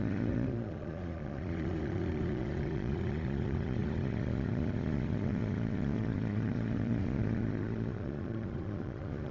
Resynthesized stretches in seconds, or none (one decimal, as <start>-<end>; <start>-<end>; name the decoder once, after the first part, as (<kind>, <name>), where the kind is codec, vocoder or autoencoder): 0.0-9.3 (vocoder, Vocos)

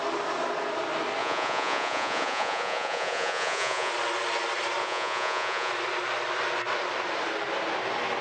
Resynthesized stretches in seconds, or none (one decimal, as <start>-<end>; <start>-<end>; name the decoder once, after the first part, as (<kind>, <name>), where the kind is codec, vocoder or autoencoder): 1.2-3.9 (vocoder, Vocos); 4.8-5.7

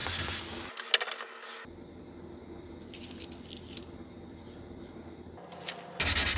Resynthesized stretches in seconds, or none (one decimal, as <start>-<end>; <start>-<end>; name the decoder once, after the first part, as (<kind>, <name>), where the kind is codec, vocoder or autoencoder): none